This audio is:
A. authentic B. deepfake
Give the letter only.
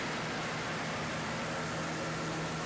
A